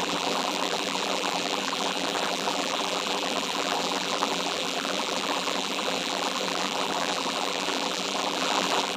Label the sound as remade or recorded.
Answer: remade